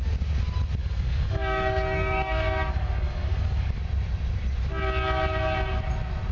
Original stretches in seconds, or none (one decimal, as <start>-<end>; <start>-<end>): 0.0-0.8; 3.8-6.3